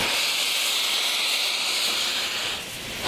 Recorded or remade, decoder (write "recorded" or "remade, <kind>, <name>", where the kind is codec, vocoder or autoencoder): remade, vocoder, BigVGAN v2